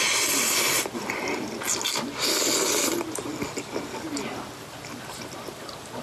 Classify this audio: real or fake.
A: real